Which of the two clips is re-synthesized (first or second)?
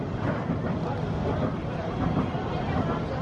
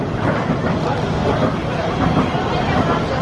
second